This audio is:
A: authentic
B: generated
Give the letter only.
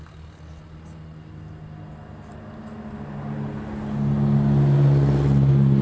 A